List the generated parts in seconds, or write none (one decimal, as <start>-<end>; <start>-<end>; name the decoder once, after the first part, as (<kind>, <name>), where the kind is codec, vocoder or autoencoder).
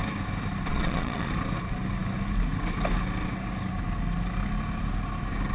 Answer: 0.7-1.3 (vocoder, Vocos)